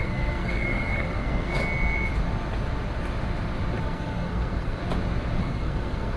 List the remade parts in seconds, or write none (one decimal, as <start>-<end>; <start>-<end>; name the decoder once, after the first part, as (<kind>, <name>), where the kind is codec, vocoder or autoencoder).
0.0-1.6 (codec, SNAC); 3.8-4.8; 5.4-6.2